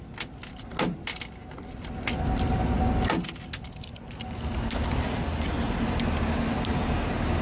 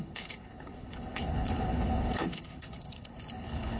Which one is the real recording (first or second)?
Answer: first